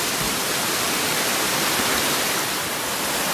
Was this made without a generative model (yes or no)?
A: yes